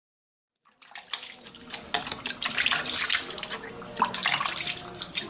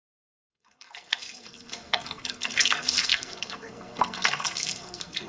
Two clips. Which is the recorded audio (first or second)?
first